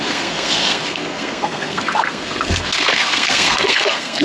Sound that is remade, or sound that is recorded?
remade